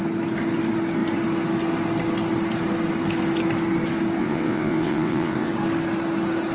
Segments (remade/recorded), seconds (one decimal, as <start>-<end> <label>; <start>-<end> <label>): 0.0-4.2 recorded; 4.2-5.5 remade; 5.5-6.5 recorded